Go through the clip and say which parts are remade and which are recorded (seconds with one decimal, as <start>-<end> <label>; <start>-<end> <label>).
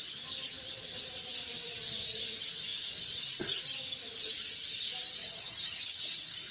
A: 0.0-5.2 recorded; 5.2-6.0 remade; 6.0-6.5 recorded